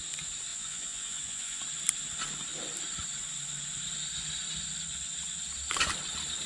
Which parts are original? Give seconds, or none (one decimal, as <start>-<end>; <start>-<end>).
0.0-0.5; 1.6-6.5